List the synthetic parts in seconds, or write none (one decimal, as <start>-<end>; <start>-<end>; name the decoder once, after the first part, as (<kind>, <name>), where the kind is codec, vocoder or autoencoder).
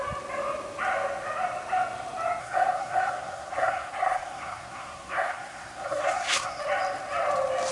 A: 2.4-6.6 (codec, SNAC)